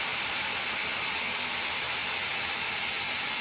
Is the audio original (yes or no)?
yes